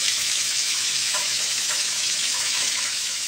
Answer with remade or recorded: remade